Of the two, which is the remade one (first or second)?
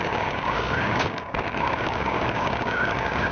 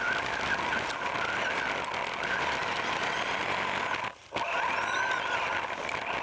first